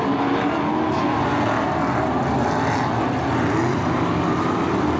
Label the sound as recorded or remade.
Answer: recorded